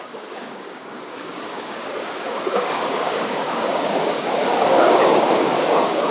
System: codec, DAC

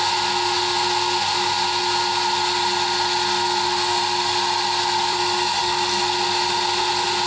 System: none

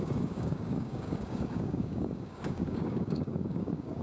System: codec, DAC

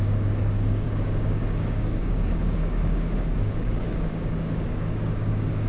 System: codec, DAC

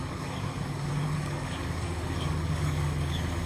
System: codec, DAC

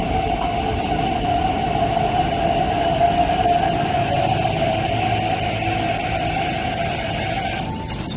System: none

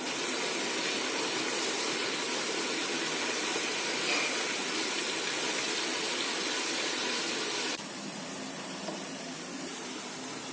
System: none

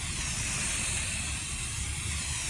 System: none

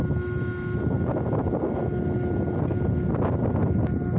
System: none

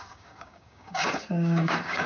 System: codec, DAC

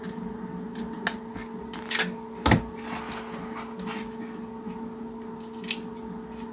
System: none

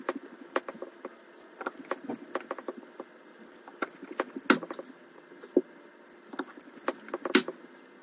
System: none